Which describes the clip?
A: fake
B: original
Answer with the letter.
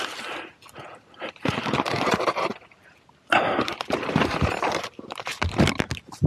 B